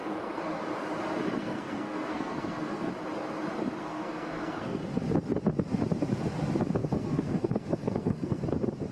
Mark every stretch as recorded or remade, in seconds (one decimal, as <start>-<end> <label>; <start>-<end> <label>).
0.0-0.6 remade; 0.6-1.4 recorded; 1.4-2.9 remade; 2.9-3.8 recorded; 3.8-4.8 remade; 4.8-6.8 recorded; 6.8-8.4 remade; 8.4-8.9 recorded